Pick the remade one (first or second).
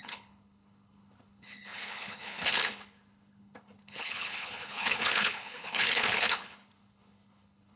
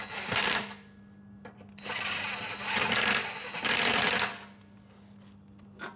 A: first